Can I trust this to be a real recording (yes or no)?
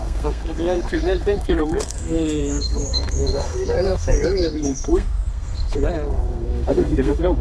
no